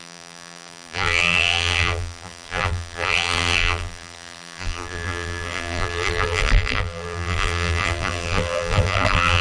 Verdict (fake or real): fake